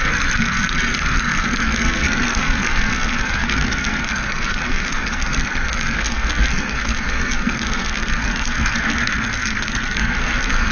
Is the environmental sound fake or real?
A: fake